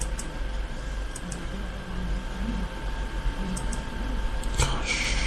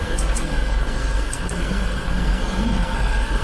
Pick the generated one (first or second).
second